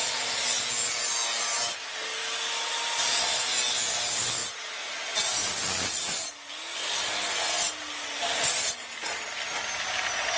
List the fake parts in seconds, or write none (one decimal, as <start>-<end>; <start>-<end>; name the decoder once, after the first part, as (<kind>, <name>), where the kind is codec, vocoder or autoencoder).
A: none